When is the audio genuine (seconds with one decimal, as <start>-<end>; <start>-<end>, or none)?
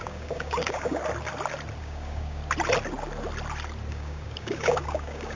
1.0-1.8; 2.4-3.9